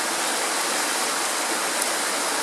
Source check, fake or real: real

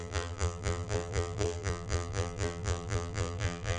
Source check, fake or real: fake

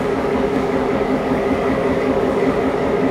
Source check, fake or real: fake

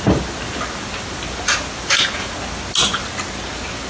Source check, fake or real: real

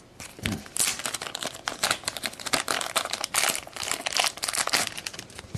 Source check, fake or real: real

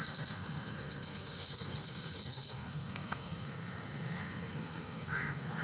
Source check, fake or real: fake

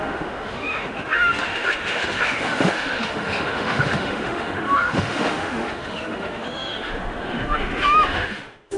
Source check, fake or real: fake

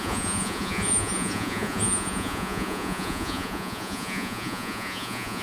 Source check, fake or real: fake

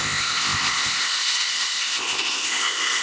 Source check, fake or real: fake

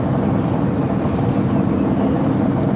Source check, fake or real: real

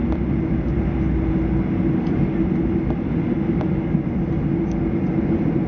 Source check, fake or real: real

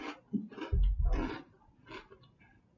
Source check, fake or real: real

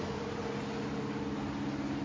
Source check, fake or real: real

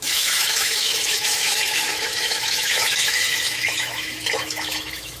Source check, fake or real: fake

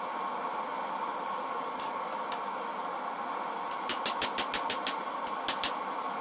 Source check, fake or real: real